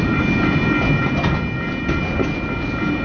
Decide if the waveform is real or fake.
real